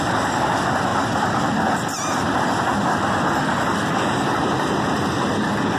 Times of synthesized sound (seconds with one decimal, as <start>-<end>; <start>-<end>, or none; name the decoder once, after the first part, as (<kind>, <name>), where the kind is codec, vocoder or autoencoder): 0.9-1.4 (vocoder, BigVGAN v2)